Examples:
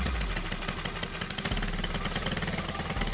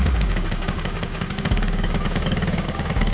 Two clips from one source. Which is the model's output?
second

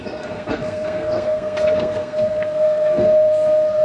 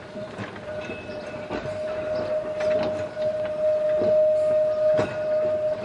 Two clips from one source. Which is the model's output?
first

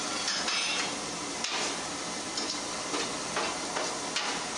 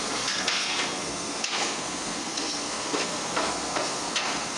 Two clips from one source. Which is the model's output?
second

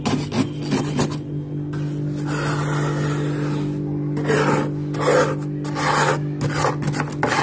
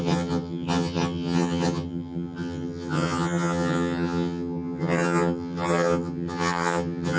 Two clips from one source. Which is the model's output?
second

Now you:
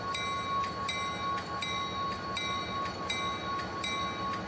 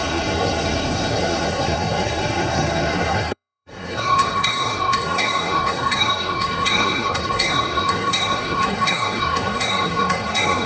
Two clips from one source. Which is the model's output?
second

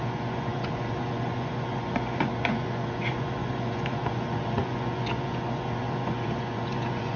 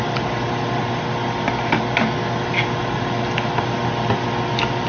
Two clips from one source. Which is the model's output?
first